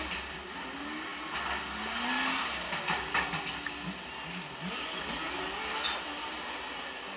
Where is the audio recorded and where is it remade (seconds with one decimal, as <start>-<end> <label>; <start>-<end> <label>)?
0.0-7.2 recorded

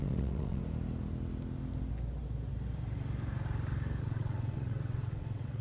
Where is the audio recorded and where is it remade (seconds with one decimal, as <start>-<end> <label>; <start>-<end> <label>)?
0.0-0.6 remade; 0.6-4.0 recorded; 4.0-5.6 remade

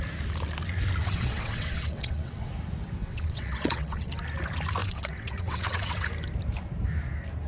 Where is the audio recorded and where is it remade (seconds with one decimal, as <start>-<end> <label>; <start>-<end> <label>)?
0.0-1.0 recorded; 1.0-2.5 remade; 2.5-3.0 recorded; 3.0-4.1 remade; 4.1-4.8 recorded; 4.8-6.1 remade; 6.1-7.5 recorded

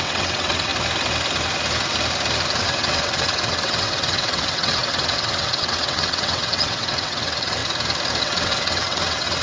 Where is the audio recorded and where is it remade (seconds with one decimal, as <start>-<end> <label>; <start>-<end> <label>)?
0.0-0.7 remade; 0.7-2.6 recorded; 2.6-7.6 remade; 7.6-8.2 recorded; 8.2-9.4 remade

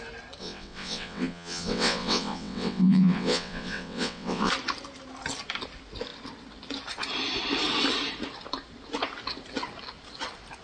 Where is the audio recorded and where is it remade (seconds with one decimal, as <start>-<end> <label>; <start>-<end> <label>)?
0.0-0.4 recorded; 0.4-4.5 remade; 4.5-10.6 recorded

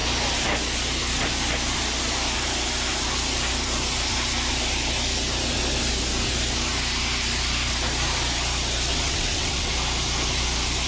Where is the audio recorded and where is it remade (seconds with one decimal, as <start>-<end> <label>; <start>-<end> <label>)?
0.0-8.9 recorded; 8.9-9.7 remade; 9.7-10.9 recorded